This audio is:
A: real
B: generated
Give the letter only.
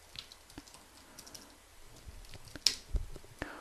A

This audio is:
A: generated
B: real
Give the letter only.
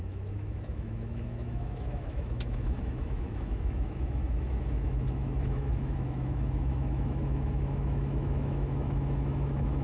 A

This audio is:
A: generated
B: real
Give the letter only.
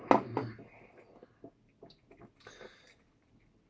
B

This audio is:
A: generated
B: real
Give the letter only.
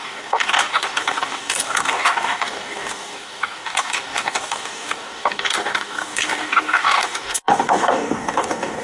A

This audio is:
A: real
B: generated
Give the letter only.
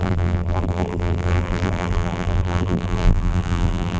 B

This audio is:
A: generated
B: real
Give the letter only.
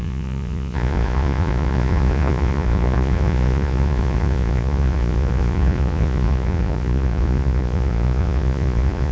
A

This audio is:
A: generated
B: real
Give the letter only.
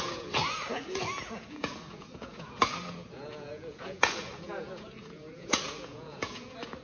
A